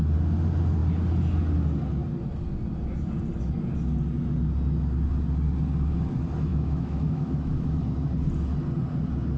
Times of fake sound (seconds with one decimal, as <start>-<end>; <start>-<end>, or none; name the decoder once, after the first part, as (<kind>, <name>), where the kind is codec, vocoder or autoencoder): 6.5-7.8 (autoencoder, DAC-VAE)